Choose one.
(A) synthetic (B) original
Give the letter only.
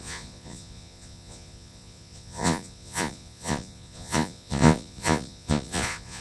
A